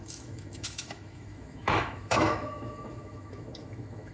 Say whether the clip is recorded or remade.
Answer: remade